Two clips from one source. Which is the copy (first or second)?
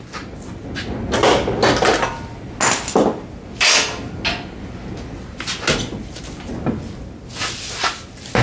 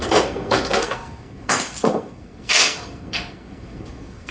second